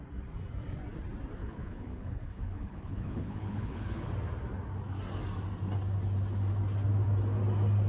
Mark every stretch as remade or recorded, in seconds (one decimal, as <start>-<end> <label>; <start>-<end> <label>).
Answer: 0.0-1.4 recorded; 1.4-4.1 remade; 4.1-7.9 recorded